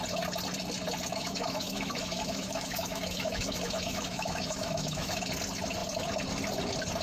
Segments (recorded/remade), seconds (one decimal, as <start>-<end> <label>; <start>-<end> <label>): 0.0-1.1 recorded; 1.1-5.3 remade; 5.3-7.0 recorded